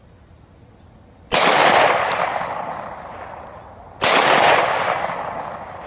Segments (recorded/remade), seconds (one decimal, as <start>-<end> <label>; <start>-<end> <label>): 0.0-1.6 recorded; 1.6-2.9 remade; 2.9-5.9 recorded